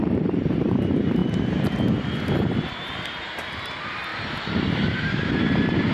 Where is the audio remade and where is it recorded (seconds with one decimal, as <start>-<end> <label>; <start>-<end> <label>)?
0.0-1.2 remade; 1.2-2.7 recorded; 2.7-5.9 remade